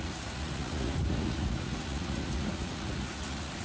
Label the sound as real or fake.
fake